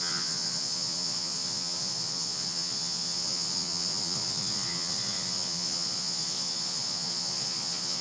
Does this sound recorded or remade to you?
remade